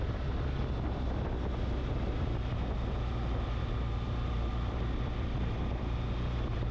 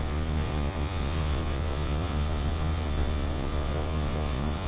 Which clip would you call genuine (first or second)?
first